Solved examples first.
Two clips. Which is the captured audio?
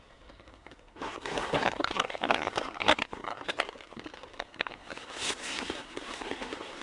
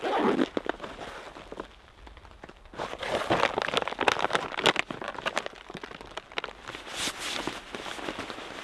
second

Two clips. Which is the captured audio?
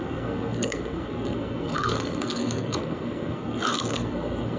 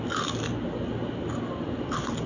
second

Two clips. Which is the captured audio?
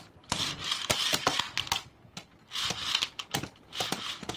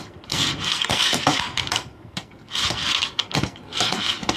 first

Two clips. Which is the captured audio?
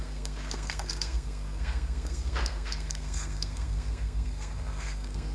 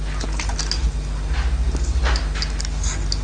second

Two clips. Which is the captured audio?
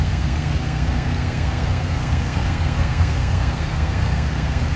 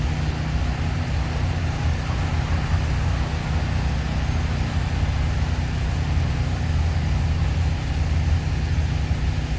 second